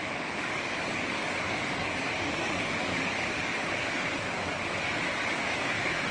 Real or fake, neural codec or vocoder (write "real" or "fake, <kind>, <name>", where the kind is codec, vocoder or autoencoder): fake, codec, DAC